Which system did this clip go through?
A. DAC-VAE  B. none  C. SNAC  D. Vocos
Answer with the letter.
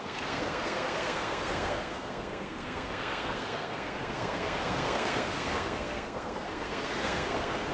C